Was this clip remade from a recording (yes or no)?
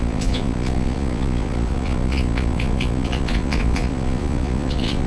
yes